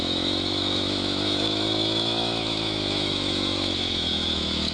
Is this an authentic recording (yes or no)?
no